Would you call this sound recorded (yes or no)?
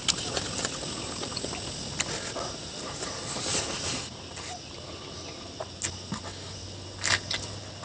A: yes